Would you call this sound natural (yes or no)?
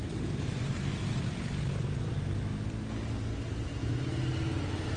yes